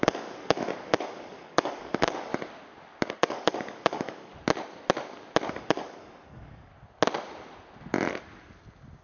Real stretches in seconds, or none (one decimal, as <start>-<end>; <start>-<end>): 2.3-3.2; 4.3-5.5; 6.7-9.0